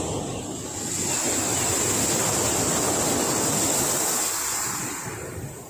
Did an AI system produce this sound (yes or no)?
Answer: no